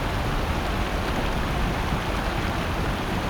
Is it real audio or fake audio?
real